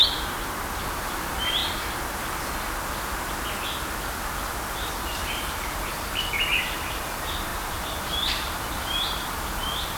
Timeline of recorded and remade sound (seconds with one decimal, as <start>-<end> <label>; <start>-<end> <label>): 0.0-0.8 recorded; 0.8-1.6 remade; 1.6-5.0 recorded; 5.0-10.0 remade